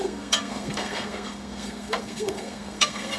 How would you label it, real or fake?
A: fake